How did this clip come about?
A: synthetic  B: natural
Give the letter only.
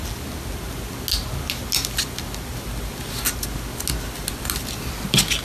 B